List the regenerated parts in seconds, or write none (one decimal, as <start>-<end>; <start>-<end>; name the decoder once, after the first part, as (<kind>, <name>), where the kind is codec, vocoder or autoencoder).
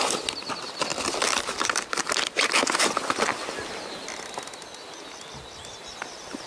none